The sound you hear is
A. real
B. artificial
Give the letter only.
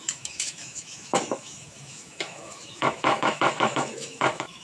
B